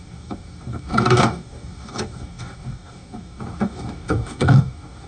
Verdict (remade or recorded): remade